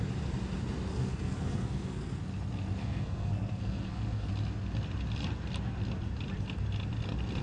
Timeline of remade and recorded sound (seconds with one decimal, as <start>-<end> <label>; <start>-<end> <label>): 0.0-0.9 recorded; 0.9-2.2 remade; 2.2-2.8 recorded; 2.8-4.3 remade; 4.3-7.4 recorded